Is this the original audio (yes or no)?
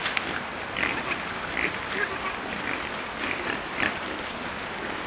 yes